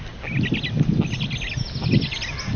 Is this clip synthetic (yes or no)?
no